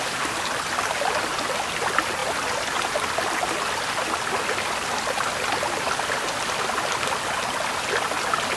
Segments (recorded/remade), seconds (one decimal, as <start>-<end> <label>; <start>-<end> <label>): 0.0-8.6 recorded